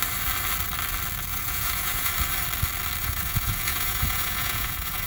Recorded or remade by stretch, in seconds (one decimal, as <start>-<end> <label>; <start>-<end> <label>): 0.0-1.3 recorded; 1.3-2.1 remade; 2.1-3.0 recorded; 3.0-5.1 remade